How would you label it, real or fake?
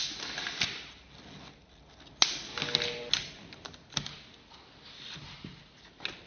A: real